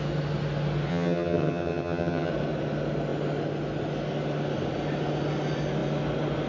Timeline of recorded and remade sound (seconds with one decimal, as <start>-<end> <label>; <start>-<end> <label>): 0.0-0.9 recorded; 0.9-2.3 remade; 2.3-6.5 recorded